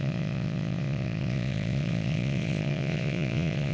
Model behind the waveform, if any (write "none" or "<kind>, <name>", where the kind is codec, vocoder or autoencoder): vocoder, Vocos